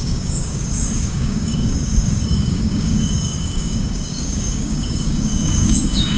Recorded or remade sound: remade